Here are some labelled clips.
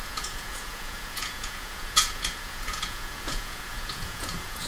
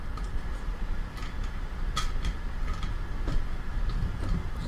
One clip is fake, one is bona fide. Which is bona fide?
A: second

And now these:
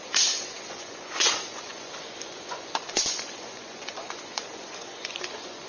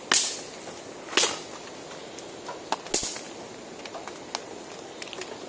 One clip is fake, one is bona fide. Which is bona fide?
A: second